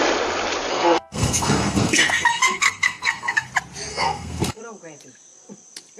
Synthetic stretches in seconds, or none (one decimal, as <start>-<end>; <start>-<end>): 0.7-3.5; 3.9-4.6